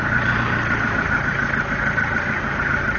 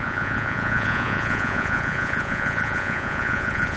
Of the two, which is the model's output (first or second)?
second